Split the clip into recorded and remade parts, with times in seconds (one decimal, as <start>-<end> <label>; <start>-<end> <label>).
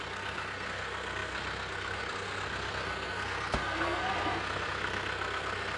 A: 0.0-5.8 remade